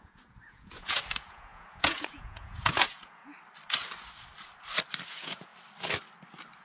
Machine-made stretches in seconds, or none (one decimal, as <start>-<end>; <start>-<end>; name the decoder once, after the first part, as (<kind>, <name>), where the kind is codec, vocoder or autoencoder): 0.0-3.2 (vocoder, Vocos); 5.1-5.5